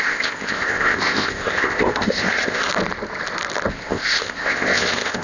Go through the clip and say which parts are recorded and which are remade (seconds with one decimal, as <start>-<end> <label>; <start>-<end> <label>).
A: 0.0-2.7 remade; 2.7-3.7 recorded; 3.7-5.2 remade